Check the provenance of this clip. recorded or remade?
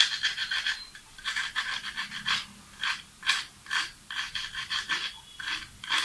recorded